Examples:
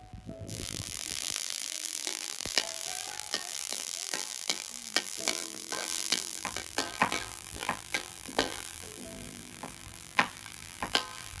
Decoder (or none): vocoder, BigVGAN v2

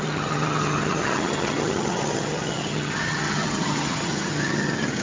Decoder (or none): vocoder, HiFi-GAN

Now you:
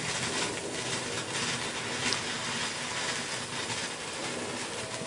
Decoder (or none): none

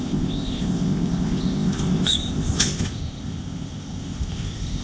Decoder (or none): codec, ZipCodec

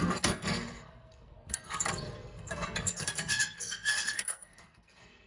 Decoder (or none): codec, SNAC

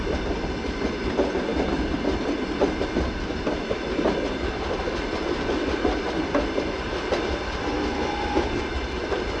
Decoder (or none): none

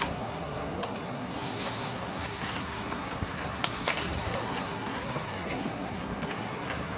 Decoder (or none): codec, SNAC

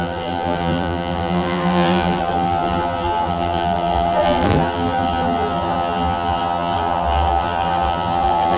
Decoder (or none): vocoder, BigVGAN v2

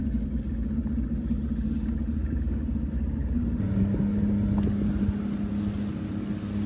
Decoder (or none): none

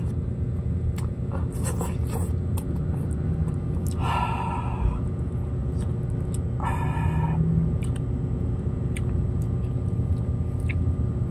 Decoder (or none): none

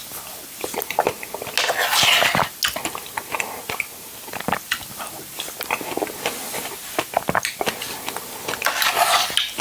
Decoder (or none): none